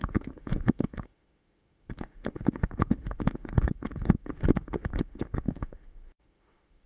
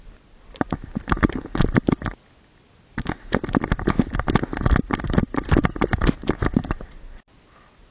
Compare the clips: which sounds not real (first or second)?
first